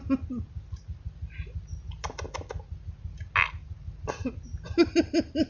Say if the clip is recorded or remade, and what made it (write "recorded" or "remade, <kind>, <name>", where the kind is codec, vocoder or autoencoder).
recorded